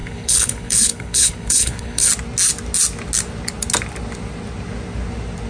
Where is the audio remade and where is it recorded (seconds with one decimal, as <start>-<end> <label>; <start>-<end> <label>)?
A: 0.0-2.1 remade; 2.1-5.5 recorded